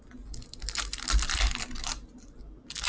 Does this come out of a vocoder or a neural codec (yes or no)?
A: no